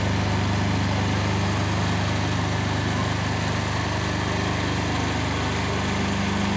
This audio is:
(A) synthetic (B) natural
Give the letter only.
B